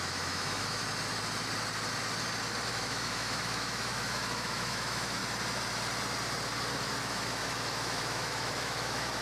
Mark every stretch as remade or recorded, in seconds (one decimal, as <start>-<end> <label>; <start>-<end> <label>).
0.0-0.8 remade; 0.8-2.7 recorded; 2.7-5.2 remade; 5.2-7.0 recorded; 7.0-9.2 remade